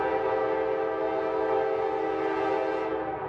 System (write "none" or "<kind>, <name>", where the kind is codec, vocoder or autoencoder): none